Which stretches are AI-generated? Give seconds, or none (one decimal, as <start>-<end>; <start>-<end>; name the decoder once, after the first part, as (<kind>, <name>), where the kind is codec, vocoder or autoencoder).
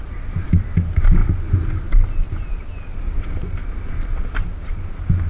none